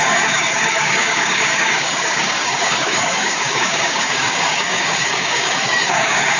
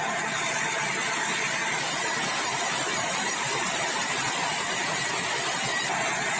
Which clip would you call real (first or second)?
second